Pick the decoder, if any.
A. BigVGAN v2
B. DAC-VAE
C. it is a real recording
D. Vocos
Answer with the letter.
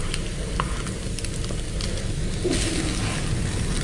C